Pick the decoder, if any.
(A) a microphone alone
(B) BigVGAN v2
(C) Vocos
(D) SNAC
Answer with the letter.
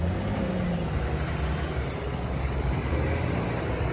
A